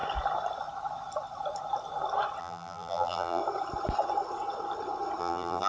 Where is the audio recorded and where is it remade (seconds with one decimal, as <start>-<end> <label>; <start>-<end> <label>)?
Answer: 0.0-2.4 recorded; 2.4-3.4 remade; 3.4-5.2 recorded; 5.2-5.7 remade